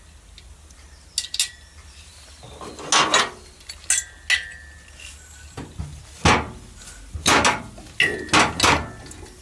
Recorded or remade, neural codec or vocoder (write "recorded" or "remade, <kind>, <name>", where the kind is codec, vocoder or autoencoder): recorded